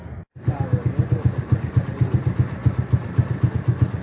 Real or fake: real